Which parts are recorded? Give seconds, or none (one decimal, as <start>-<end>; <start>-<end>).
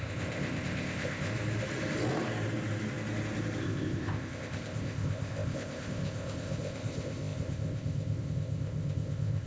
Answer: 1.3-3.6